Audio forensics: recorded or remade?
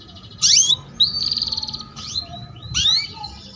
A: remade